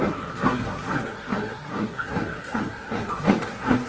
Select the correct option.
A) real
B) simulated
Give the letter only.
B